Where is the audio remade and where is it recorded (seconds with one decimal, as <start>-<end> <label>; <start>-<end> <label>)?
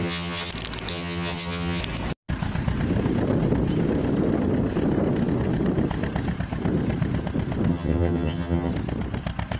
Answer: 0.0-0.5 remade; 0.5-0.9 recorded; 0.9-1.8 remade; 1.8-7.7 recorded; 7.7-8.7 remade; 8.7-9.6 recorded